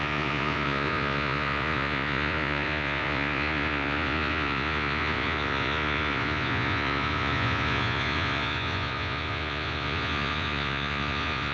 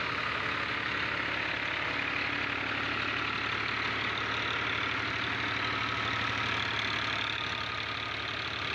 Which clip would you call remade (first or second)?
first